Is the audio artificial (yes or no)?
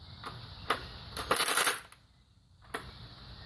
no